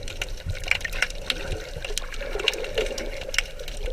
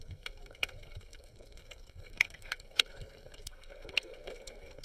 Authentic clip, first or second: first